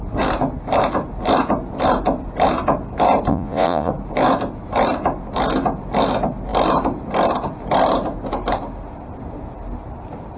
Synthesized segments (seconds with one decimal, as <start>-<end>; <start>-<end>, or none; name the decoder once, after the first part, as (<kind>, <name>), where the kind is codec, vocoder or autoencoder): 3.3-3.9 (vocoder, Vocos)

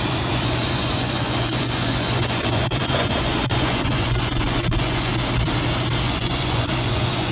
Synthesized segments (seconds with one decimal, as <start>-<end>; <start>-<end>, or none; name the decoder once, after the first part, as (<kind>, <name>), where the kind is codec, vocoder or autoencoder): 0.0-5.1 (vocoder, Vocos); 6.0-7.3

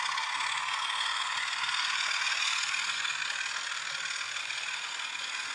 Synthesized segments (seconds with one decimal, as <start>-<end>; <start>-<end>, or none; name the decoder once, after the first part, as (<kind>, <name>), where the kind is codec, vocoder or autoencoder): 0.0-3.2 (vocoder, Vocos); 4.4-5.5

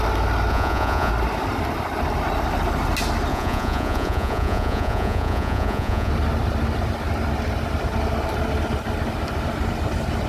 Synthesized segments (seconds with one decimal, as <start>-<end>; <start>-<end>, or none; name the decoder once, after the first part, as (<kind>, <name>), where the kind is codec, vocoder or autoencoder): 0.5-1.1 (vocoder, Vocos); 3.3-6.1

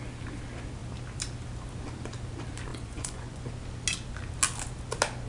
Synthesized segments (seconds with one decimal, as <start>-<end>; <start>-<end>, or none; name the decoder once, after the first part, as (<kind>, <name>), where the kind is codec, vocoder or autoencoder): 2.7-3.5 (vocoder, Vocos)

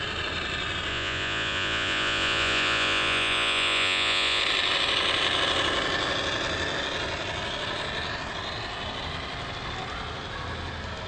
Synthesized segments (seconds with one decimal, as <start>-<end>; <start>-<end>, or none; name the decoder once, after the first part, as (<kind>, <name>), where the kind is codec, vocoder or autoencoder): 0.9-4.4 (vocoder, Vocos)

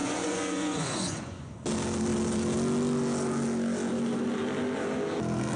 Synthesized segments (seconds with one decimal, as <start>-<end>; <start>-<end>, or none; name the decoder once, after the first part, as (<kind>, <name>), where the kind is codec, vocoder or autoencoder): 0.0-1.6 (vocoder, Vocos)

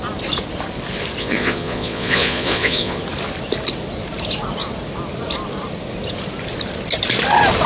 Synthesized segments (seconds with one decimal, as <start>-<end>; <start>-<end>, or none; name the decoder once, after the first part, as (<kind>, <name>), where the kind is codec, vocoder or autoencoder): 1.2-3.0 (vocoder, Vocos)